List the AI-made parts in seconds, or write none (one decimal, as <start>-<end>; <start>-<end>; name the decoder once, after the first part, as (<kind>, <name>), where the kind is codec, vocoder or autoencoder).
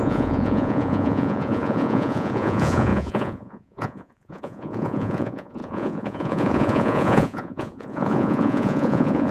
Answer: 0.0-9.3 (vocoder, Vocos)